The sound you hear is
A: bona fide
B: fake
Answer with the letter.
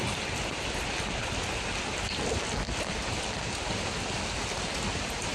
A